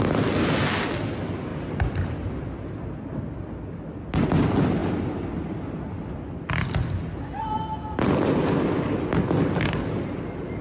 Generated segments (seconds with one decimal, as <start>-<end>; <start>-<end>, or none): none